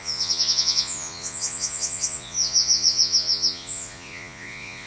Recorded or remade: remade